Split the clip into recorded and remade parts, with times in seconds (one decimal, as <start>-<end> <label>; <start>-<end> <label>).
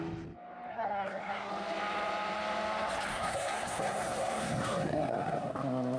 0.0-0.7 recorded; 0.7-1.5 remade; 1.5-3.1 recorded; 3.1-5.5 remade; 5.5-6.0 recorded